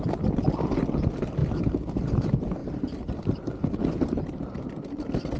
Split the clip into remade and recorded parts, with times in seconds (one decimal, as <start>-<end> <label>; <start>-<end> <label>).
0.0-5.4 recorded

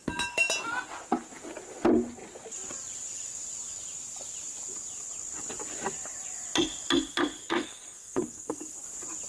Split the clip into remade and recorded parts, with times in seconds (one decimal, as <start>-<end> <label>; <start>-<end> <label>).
0.0-7.4 recorded; 7.4-8.6 remade; 8.6-9.3 recorded

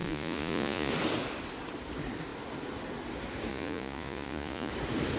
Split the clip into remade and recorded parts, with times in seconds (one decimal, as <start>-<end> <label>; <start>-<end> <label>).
0.0-0.9 remade; 0.9-3.5 recorded; 3.5-4.7 remade; 4.7-5.2 recorded

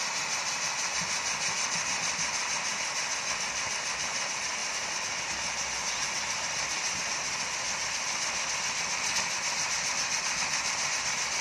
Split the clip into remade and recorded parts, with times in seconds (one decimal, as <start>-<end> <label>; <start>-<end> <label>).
0.0-4.6 recorded; 4.6-5.2 remade; 5.2-11.4 recorded

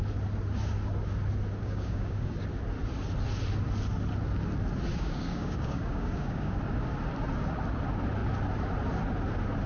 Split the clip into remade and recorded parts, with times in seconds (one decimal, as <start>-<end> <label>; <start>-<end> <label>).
0.0-1.6 recorded; 1.6-2.3 remade; 2.3-4.9 recorded; 4.9-6.6 remade; 6.6-9.7 recorded